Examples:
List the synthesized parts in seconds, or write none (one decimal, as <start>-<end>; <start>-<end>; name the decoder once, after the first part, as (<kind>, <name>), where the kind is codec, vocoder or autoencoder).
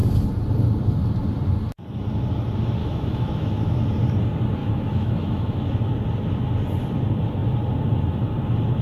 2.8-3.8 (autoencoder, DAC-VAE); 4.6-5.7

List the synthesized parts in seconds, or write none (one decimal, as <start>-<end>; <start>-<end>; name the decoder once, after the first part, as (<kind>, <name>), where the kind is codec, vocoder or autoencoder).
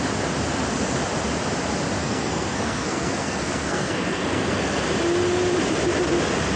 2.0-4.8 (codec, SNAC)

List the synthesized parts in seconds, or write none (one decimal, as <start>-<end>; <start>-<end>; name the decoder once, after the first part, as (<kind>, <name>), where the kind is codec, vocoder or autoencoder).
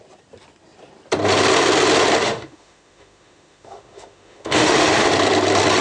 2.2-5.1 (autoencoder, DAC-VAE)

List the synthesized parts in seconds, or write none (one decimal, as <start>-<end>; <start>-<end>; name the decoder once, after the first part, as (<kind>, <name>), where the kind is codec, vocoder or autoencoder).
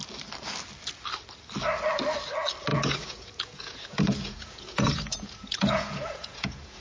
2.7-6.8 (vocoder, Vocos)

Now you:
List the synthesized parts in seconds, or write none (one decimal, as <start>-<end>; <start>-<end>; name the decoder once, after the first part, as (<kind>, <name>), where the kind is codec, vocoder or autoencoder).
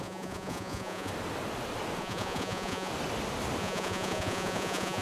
0.0-1.1 (vocoder, Vocos); 2.0-2.9; 3.6-5.0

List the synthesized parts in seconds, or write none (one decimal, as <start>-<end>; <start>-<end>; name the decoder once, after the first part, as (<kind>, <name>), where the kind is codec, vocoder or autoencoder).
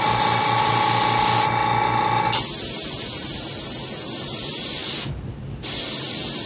none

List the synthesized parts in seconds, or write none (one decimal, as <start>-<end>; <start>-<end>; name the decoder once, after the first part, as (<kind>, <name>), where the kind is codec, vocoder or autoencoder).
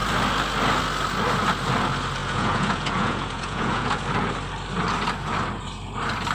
2.2-4.0 (vocoder, Vocos)